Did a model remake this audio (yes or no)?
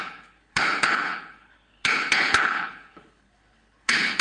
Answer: yes